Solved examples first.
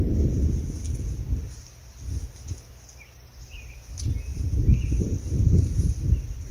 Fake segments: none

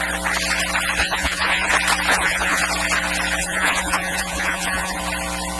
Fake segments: 1.0-1.7 (vocoder, Vocos); 2.1-2.6; 3.4-5.0